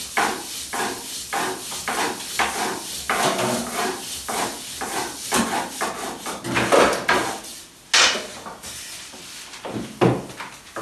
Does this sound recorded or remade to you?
recorded